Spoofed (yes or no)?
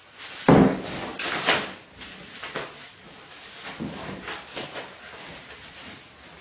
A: no